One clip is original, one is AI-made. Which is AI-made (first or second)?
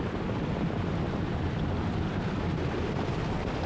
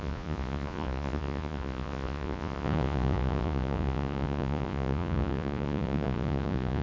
second